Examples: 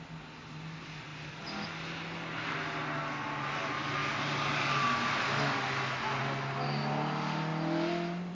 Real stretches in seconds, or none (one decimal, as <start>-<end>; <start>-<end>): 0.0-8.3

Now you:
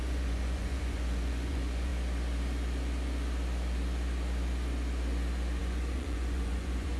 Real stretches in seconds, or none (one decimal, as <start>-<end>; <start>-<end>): 1.9-5.6

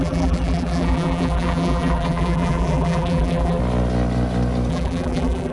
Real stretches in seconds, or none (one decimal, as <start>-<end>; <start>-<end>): 3.6-4.7

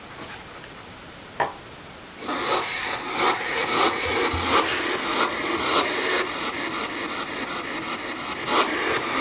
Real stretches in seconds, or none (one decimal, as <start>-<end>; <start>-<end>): 0.0-3.5; 4.2-5.1; 6.0-9.2